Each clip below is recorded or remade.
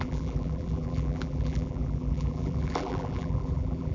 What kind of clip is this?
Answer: remade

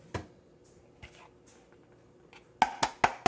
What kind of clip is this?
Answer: recorded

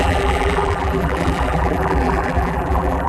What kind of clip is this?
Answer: remade